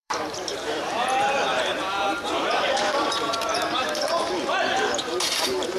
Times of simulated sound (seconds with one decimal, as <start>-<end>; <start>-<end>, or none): 0.0-3.5; 4.9-5.8